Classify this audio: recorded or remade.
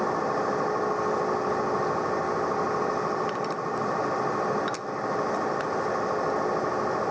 recorded